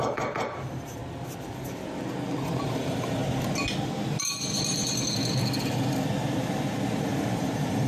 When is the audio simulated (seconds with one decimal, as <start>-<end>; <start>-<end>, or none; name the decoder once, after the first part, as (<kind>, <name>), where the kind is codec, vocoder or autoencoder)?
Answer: 0.0-1.0 (vocoder, BigVGAN v2); 2.6-3.2; 7.0-7.9